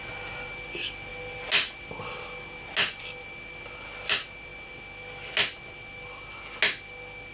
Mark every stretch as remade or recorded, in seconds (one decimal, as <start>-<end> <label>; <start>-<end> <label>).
0.0-7.3 recorded